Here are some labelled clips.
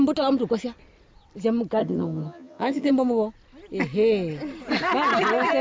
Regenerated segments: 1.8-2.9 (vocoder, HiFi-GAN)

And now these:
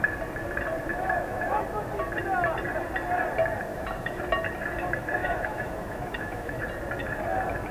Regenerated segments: 0.9-1.6 (autoencoder, DAC-VAE); 3.7-4.2; 5.2-6.6

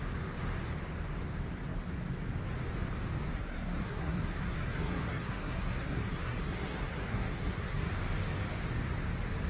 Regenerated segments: 3.3-7.9 (codec, SNAC)

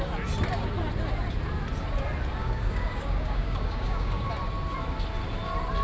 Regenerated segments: 2.4-4.3 (codec, DAC)

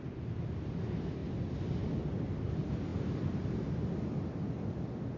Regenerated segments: none

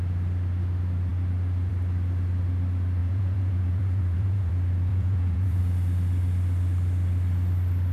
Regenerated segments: 3.0-4.5 (vocoder, Vocos); 4.9-5.6